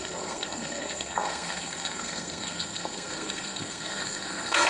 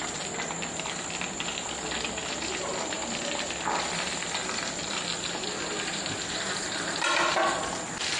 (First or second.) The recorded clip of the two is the second